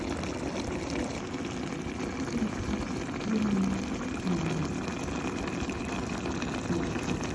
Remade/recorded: recorded